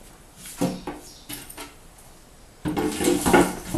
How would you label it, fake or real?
real